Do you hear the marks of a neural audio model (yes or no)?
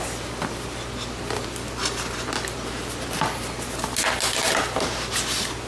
no